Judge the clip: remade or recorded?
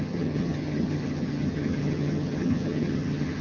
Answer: remade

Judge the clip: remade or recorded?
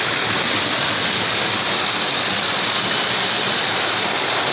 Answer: recorded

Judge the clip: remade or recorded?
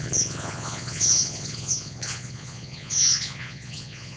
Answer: remade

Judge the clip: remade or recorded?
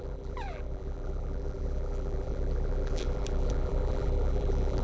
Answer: remade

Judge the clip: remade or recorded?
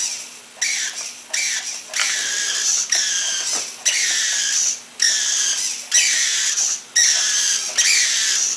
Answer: recorded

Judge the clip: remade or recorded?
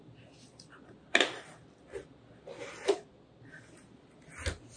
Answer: recorded